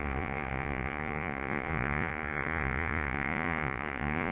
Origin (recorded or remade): remade